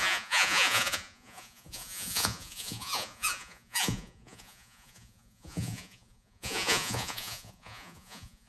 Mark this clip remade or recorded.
remade